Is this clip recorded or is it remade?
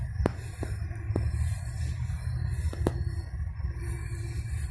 recorded